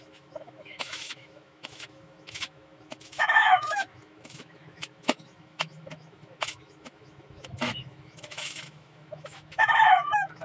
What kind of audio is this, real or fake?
fake